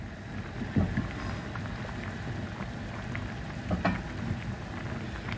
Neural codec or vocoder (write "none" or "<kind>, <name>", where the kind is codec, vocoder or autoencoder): none